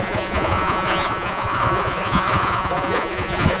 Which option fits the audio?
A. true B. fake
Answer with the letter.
B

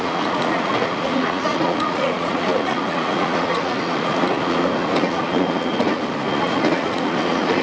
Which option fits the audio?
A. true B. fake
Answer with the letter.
B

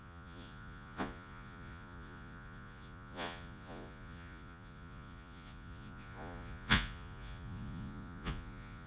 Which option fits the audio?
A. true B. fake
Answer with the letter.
B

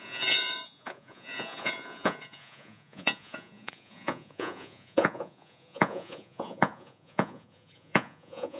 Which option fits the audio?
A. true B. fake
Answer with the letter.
B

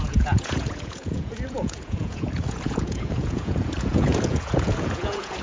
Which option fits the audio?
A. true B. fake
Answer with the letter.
B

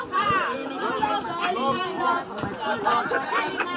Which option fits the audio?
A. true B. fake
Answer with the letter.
A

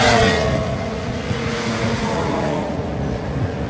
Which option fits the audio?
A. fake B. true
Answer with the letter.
A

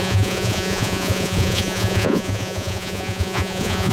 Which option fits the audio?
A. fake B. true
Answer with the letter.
A